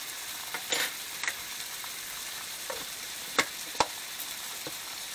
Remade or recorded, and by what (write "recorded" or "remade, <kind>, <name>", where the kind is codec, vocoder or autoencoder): remade, vocoder, BigVGAN v2